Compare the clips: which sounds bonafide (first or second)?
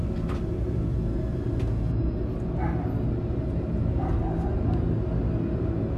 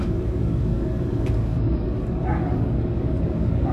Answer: first